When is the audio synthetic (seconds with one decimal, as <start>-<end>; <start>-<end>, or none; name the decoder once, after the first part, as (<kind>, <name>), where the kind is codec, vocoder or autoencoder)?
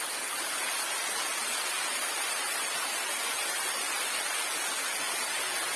1.0-4.5 (vocoder, BigVGAN v2)